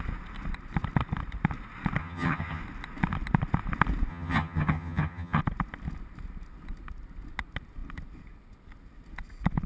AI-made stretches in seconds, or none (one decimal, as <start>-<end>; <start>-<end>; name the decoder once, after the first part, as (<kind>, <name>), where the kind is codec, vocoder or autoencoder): 2.0-2.6 (vocoder, HiFi-GAN); 4.1-5.4